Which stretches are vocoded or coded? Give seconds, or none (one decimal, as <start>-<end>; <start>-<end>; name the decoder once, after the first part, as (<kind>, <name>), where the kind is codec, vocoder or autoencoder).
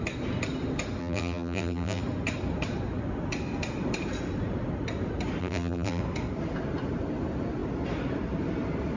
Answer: 1.0-2.0 (vocoder, BigVGAN v2); 5.4-6.0